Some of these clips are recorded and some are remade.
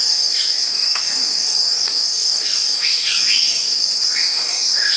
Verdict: remade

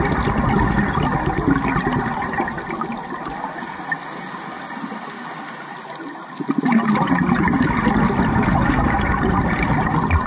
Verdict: recorded